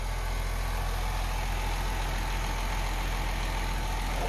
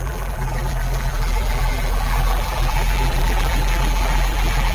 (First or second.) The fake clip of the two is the second